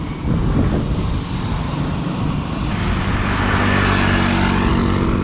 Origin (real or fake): real